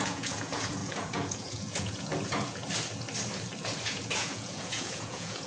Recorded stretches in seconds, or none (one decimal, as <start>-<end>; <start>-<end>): 2.6-3.9